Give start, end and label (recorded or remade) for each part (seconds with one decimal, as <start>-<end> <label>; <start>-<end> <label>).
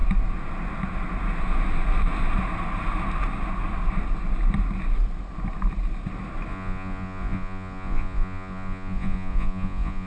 0.0-6.5 recorded; 6.5-10.1 remade